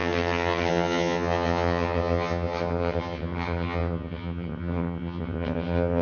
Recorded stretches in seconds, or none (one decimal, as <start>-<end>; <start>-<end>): none